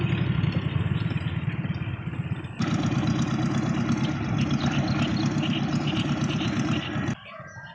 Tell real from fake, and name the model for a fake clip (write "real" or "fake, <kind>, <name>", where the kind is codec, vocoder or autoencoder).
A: real